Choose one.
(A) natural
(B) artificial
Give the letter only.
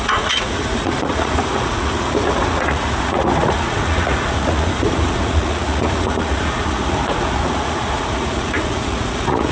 B